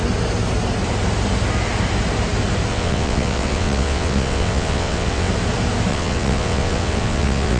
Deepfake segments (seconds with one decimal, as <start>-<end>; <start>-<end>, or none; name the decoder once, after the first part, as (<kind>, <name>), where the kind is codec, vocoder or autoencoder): 2.7-5.3 (vocoder, WaveNeXt); 5.9-7.6